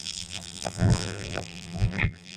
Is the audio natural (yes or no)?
no